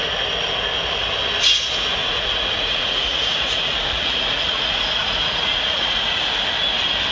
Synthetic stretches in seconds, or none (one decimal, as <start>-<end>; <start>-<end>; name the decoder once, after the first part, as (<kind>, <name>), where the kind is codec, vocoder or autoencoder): 2.0-6.3 (vocoder, Vocos)